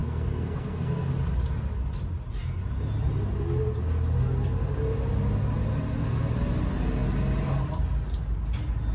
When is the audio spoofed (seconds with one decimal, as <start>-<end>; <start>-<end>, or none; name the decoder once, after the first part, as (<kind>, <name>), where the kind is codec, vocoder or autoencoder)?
0.0-1.1 (codec, SNAC)